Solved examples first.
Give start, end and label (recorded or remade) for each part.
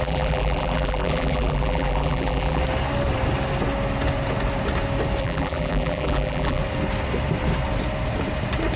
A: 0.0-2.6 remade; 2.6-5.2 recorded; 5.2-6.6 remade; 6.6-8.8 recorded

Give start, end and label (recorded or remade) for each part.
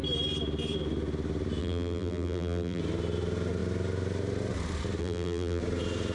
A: 0.0-1.6 recorded; 1.6-2.8 remade; 2.8-5.0 recorded; 5.0-5.6 remade; 5.6-6.1 recorded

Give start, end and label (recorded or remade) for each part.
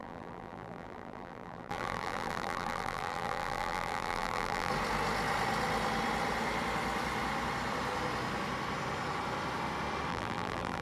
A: 0.0-4.7 remade; 4.7-10.1 recorded; 10.1-10.8 remade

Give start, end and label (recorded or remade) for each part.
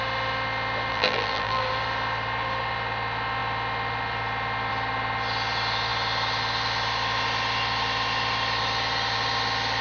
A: 0.0-0.9 recorded; 0.9-1.6 remade; 1.6-9.8 recorded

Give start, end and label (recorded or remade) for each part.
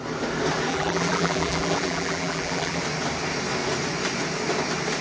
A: 0.0-0.7 recorded; 0.7-2.8 remade; 2.8-5.0 recorded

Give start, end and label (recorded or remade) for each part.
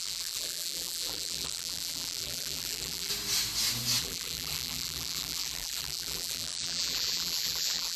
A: 0.0-3.1 remade; 3.1-4.0 recorded; 4.0-8.0 remade